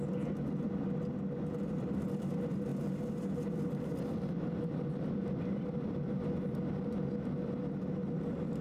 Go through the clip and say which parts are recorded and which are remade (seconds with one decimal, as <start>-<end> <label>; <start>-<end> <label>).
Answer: 0.0-8.6 recorded